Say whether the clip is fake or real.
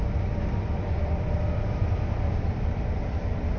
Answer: fake